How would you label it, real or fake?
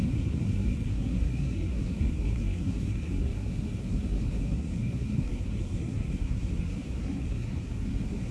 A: fake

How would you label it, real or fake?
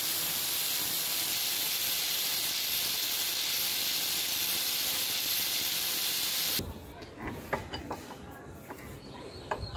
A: fake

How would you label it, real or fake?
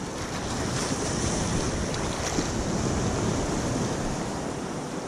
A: real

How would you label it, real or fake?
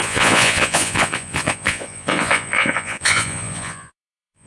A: fake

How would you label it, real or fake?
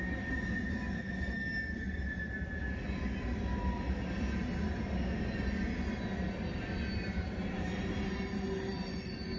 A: real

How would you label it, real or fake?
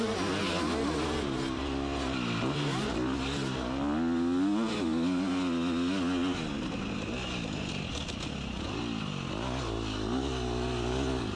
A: real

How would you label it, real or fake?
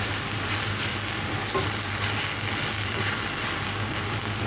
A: real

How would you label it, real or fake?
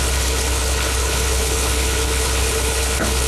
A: fake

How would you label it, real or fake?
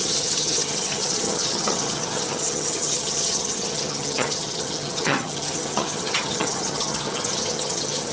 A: fake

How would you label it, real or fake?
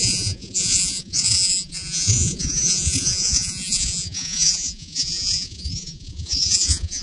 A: fake